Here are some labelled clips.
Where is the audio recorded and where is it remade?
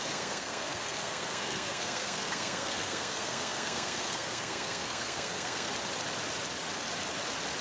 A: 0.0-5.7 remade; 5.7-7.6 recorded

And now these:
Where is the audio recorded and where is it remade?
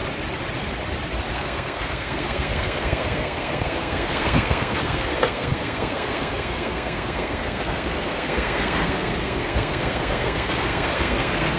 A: 0.0-1.3 recorded; 1.3-11.6 remade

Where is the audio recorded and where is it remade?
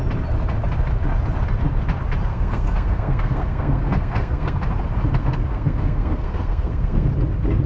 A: 0.0-2.3 recorded; 2.3-4.6 remade; 4.6-5.2 recorded; 5.2-7.1 remade; 7.1-7.7 recorded